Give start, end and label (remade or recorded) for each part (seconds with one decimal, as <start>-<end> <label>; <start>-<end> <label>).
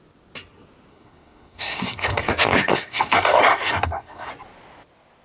0.0-0.9 recorded; 0.9-2.3 remade; 2.3-2.7 recorded; 2.7-4.3 remade; 4.3-5.2 recorded